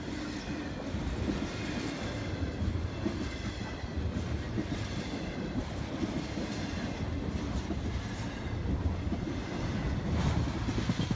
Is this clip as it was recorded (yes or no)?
yes